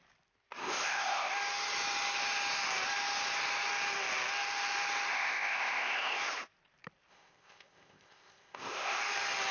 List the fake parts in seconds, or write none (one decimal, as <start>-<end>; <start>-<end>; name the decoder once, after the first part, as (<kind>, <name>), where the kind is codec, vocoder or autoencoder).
0.6-1.3 (codec, ZipCodec); 5.1-6.2; 7.1-9.0